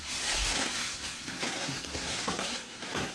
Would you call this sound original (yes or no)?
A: no